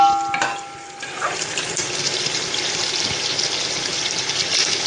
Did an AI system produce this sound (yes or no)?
no